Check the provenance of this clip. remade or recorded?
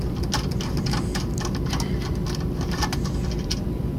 recorded